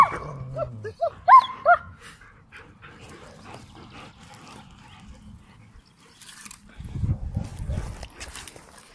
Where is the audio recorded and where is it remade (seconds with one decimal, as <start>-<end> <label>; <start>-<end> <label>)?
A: 0.0-8.9 recorded